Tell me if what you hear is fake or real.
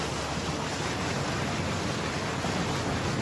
real